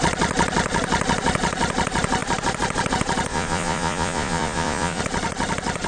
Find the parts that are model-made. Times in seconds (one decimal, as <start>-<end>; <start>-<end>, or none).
3.3-5.0